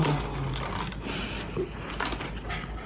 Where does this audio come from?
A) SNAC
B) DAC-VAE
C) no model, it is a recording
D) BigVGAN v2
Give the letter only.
C